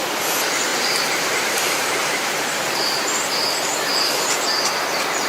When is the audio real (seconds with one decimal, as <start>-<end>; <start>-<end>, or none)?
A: 0.0-0.7; 3.3-5.3